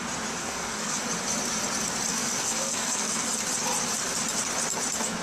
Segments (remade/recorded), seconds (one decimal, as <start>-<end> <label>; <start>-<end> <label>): 0.0-0.4 recorded; 0.4-1.0 remade; 1.0-2.1 recorded; 2.1-3.3 remade; 3.3-5.2 recorded